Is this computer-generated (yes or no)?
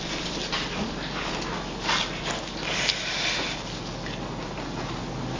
no